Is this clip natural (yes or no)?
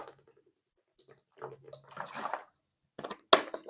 yes